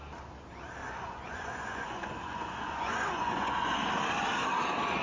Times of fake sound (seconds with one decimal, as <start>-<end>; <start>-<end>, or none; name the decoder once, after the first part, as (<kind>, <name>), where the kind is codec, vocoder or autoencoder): 0.8-3.8 (vocoder, Vocos)